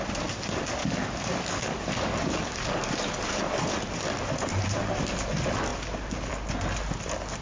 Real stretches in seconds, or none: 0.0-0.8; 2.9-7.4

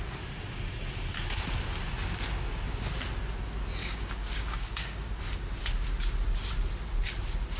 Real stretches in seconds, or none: 0.0-3.8; 5.2-7.6

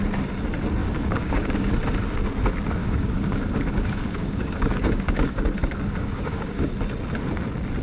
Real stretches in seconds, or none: 0.0-0.8; 1.7-2.8; 6.7-7.8

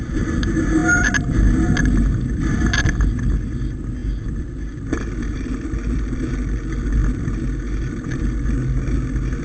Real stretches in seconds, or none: 0.0-9.4

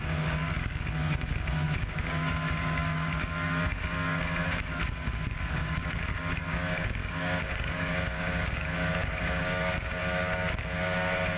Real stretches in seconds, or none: none

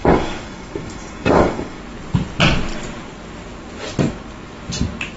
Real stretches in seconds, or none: 1.8-5.2